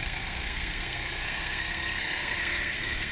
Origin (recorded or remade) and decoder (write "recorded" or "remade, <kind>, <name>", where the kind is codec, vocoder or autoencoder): remade, codec, SNAC